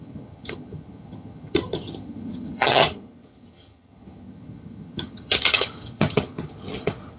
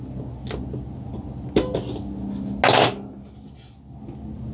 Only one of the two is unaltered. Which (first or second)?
second